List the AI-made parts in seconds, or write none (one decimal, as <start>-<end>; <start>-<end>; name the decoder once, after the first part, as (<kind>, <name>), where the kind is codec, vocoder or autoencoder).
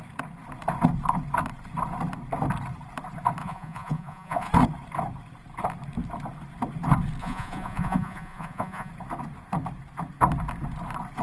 3.4-4.5 (vocoder, Vocos); 7.2-8.9